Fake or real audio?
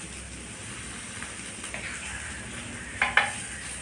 real